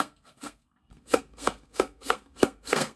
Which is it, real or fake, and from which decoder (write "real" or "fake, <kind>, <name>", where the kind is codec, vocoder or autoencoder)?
fake, codec, SNAC